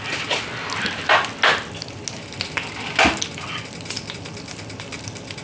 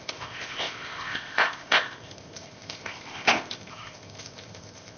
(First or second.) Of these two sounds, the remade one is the second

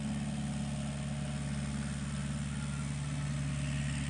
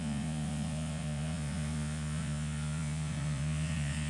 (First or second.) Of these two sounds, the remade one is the second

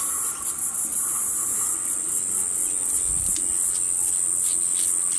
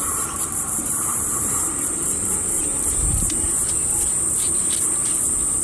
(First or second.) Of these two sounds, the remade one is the second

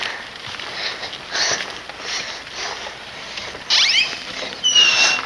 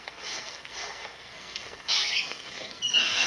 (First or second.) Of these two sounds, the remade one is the second